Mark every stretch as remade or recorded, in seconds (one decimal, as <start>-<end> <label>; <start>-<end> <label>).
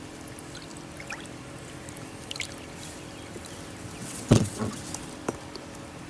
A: 0.0-4.0 recorded; 4.0-4.8 remade; 4.8-6.1 recorded